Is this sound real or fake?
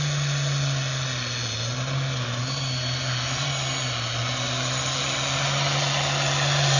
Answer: real